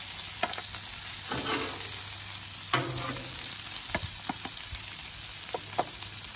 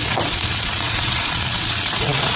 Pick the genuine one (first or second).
first